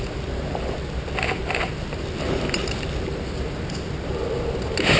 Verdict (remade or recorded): recorded